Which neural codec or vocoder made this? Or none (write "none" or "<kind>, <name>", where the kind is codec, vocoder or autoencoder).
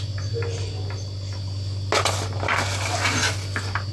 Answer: none